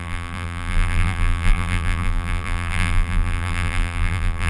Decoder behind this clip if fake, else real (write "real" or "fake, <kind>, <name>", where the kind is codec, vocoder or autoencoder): fake, vocoder, BigVGAN v2